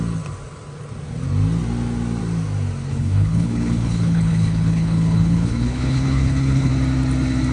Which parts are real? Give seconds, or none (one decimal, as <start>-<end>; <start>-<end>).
0.0-2.9; 6.7-7.5